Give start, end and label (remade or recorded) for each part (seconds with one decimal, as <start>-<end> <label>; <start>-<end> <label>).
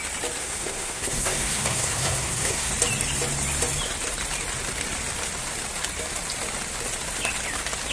0.0-0.4 recorded; 0.4-2.7 remade; 2.7-7.9 recorded